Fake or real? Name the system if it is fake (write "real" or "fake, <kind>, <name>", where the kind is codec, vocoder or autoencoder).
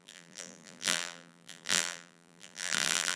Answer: fake, vocoder, BigVGAN v2